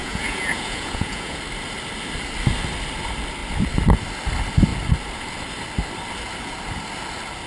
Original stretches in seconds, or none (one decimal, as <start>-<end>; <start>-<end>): 1.4-7.5